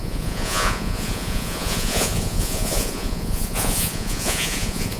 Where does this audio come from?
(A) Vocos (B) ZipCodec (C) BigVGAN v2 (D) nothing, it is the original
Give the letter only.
A